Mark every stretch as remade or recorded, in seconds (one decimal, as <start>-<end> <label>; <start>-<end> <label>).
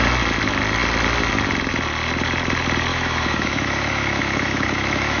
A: 0.0-2.9 recorded; 2.9-5.2 remade